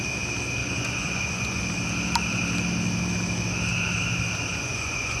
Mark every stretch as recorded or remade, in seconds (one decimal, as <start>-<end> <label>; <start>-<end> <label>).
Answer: 0.0-0.6 recorded; 0.6-1.6 remade; 1.6-4.5 recorded; 4.5-5.2 remade